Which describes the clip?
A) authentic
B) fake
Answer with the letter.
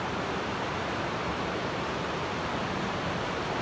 B